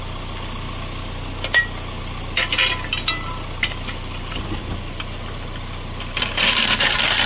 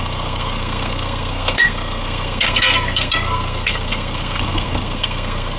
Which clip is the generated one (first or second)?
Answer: second